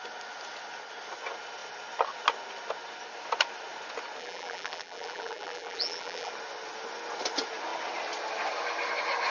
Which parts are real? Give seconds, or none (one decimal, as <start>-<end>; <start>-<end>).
0.0-4.2; 6.3-9.3